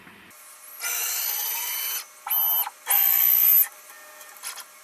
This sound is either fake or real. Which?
real